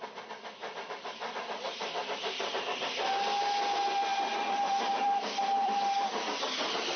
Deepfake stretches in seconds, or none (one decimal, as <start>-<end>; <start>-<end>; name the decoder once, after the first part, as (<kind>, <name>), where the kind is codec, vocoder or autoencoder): 0.6-2.4 (vocoder, BigVGAN v2); 4.1-5.8